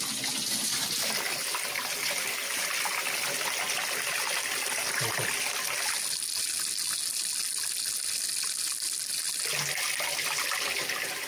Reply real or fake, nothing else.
real